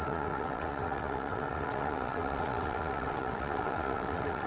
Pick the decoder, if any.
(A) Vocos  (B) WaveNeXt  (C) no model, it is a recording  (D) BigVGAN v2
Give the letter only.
B